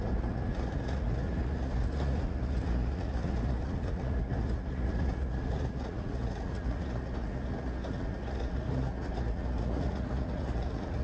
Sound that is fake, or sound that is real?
fake